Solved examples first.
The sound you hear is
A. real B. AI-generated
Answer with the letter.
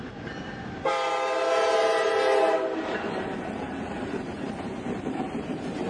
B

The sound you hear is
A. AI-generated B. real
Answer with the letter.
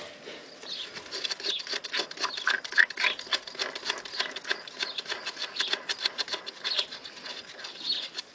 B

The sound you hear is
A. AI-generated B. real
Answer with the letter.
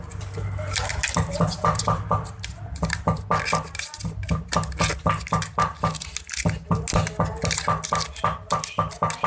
B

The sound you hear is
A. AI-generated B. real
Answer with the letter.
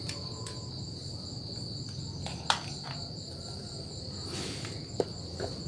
B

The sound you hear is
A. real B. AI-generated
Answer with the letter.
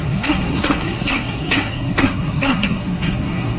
B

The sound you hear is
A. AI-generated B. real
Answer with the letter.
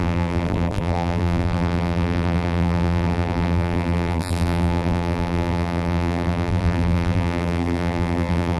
A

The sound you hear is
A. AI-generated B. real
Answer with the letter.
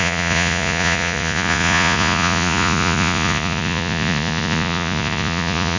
A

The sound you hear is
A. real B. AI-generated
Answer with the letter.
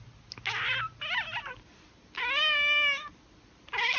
A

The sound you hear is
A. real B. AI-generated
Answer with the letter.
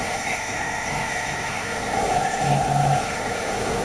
B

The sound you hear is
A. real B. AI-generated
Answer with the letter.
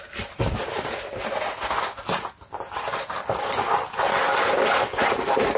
A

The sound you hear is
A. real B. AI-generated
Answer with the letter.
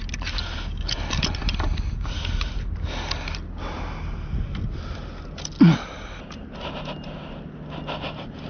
A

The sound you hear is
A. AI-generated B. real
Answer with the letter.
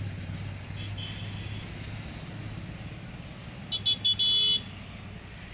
B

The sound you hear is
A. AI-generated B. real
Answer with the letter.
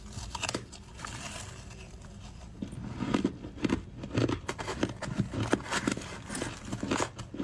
B